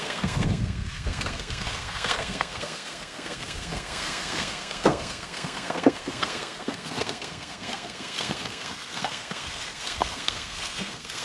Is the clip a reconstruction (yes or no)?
yes